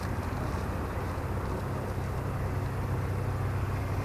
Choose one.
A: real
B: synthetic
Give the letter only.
A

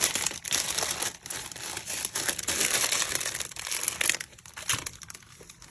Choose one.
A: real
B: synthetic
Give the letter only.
A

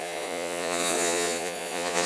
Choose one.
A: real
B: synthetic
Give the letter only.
B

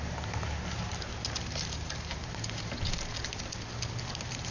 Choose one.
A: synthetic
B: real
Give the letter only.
B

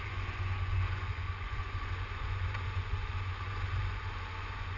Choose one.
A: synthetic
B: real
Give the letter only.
A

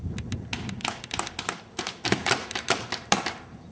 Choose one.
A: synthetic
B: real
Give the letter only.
B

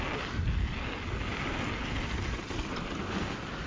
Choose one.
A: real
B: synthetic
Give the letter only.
A